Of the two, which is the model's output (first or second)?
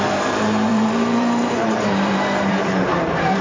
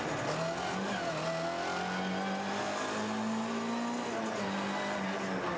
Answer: first